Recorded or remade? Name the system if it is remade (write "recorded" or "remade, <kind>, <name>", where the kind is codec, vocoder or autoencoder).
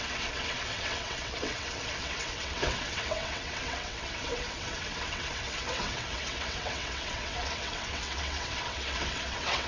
remade, vocoder, WaveNeXt